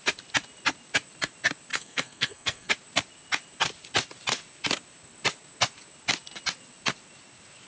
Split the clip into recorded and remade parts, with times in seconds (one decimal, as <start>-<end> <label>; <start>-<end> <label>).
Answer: 0.0-1.7 recorded; 1.7-2.7 remade; 2.7-7.7 recorded